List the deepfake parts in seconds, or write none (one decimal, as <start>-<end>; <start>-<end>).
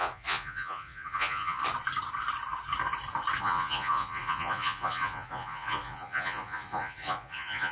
0.0-1.6; 3.4-7.7